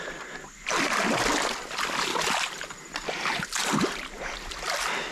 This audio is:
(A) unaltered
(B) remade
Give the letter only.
A